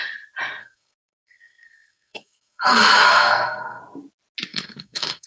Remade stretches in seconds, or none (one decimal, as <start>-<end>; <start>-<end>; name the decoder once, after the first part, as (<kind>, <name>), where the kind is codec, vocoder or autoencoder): 0.6-3.8 (codec, SNAC); 4.5-5.3